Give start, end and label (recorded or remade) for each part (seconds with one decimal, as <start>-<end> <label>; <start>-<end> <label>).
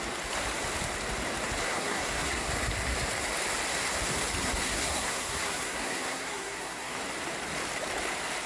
0.0-1.6 recorded; 1.6-2.5 remade; 2.5-4.4 recorded; 4.4-6.9 remade; 6.9-8.5 recorded